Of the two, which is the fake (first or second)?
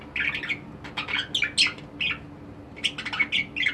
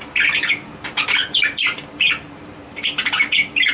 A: second